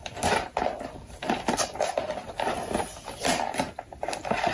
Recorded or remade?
recorded